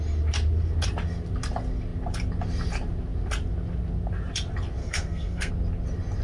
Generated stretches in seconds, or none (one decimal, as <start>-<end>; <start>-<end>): 4.8-5.5